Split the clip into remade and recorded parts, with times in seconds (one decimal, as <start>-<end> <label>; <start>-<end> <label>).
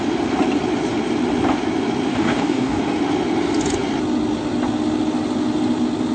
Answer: 0.0-2.1 recorded; 2.1-2.8 remade; 2.8-6.1 recorded